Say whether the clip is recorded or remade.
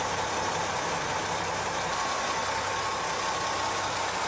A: recorded